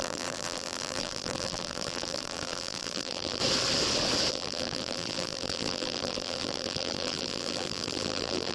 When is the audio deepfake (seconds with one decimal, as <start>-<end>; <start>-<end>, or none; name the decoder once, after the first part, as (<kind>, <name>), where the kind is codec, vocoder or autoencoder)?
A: 0.0-3.4 (vocoder, BigVGAN v2); 4.3-8.5